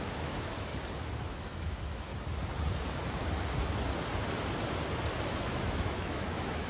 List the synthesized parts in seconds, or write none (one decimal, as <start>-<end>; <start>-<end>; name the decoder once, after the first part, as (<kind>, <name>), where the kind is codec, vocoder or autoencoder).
0.0-0.7 (autoencoder, DAC-VAE); 1.3-2.1; 5.4-6.7

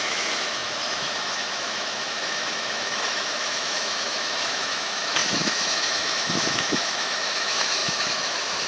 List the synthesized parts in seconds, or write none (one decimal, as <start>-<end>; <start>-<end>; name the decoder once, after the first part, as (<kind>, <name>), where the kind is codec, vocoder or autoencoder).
0.0-8.7 (autoencoder, DAC-VAE)